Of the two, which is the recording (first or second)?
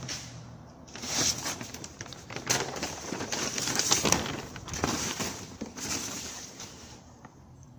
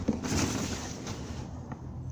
second